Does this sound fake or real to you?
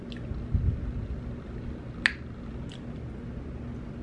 real